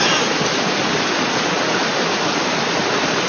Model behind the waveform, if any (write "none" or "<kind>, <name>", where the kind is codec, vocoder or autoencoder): none